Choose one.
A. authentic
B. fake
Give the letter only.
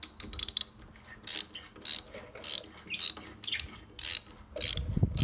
A